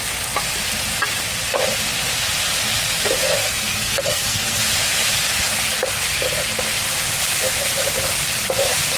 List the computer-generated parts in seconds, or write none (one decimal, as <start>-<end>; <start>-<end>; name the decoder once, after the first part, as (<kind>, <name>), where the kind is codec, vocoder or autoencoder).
3.4-4.6 (codec, SNAC)